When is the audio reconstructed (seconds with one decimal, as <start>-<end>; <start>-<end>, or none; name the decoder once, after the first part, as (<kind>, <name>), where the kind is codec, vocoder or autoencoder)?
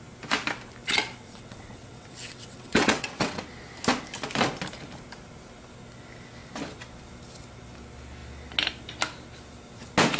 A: 1.1-3.4 (vocoder, WaveNeXt)